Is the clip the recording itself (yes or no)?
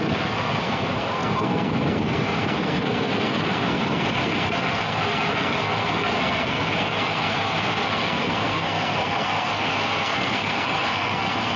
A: no